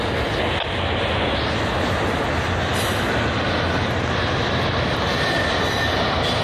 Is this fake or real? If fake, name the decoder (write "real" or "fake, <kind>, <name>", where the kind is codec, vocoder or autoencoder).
real